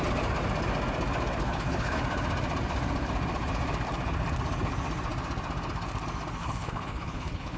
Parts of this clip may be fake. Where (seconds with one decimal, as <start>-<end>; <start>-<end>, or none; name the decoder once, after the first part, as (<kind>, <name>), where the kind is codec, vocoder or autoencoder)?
1.4-2.0 (codec, HILCodec); 6.4-7.6